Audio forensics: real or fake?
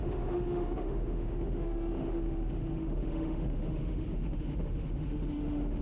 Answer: fake